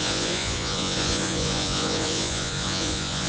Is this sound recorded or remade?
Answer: remade